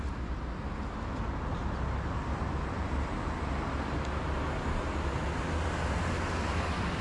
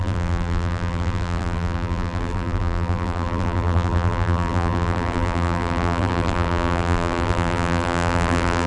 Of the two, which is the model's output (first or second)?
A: second